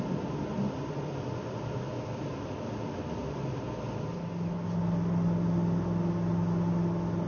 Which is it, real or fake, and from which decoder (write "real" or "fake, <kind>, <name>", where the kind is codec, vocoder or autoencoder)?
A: real